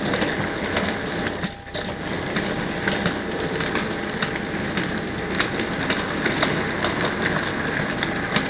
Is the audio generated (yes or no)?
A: no